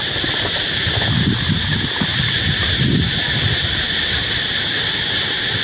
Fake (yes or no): no